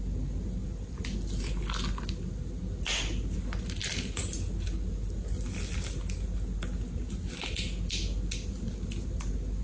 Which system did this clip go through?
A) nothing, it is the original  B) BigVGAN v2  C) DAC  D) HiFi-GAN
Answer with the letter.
A